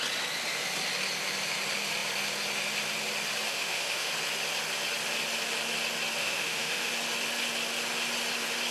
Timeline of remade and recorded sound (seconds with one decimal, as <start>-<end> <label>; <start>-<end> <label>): 0.0-3.5 recorded; 3.5-4.1 remade; 4.1-6.2 recorded; 6.2-6.9 remade; 6.9-8.7 recorded